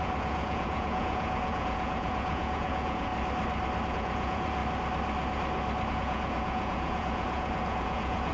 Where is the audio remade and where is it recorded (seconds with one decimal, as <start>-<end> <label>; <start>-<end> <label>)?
0.0-3.1 remade; 3.1-3.9 recorded; 3.9-4.6 remade; 4.6-5.9 recorded; 5.9-8.3 remade